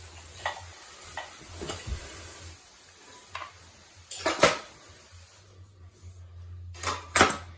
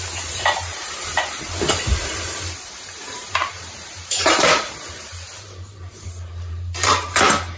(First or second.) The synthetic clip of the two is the second